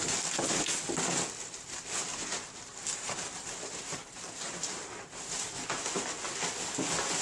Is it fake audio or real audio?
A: real